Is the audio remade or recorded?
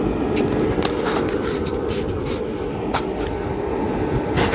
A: recorded